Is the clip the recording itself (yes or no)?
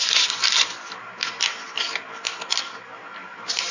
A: yes